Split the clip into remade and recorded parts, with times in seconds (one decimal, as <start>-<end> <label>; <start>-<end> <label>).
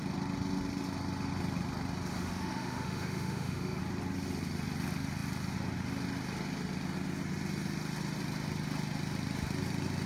0.0-2.1 recorded; 2.1-3.8 remade; 3.8-10.1 recorded